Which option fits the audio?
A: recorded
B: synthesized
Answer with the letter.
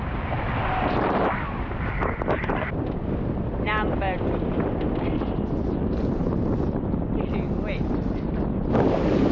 A